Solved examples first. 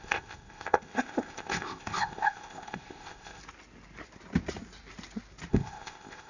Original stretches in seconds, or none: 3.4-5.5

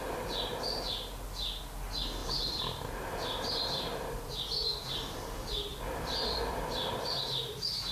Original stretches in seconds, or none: 0.0-2.2; 5.2-5.7; 7.3-7.9

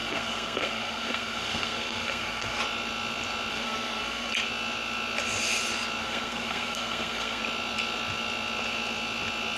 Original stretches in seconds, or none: 2.6-3.5; 4.3-6.0; 7.4-9.6

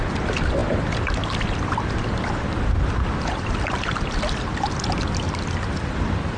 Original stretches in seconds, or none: 0.0-6.4

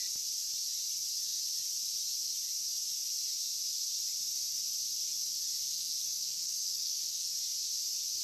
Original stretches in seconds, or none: 0.0-5.7; 7.3-8.2

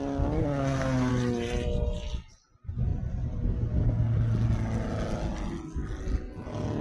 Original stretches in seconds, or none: 0.0-0.4; 1.1-6.8

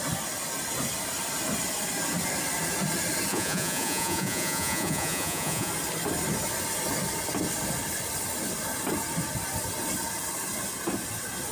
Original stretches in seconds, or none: 0.0-3.3; 5.7-11.5

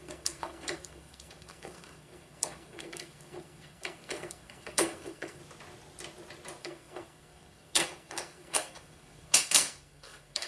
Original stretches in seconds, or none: 5.4-6.6